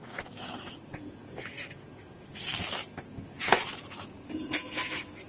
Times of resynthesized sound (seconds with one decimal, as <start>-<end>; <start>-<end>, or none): 0.0-2.5; 3.4-5.3